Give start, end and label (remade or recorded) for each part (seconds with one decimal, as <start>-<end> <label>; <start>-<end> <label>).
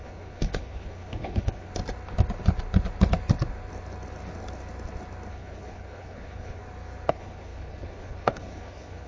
0.0-1.7 remade; 1.7-5.3 recorded; 5.3-6.6 remade; 6.6-7.1 recorded; 7.1-9.1 remade